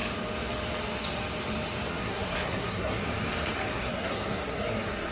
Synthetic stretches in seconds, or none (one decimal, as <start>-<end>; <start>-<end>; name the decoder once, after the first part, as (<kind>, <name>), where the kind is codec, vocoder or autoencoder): 1.9-3.0 (codec, SNAC); 3.7-5.1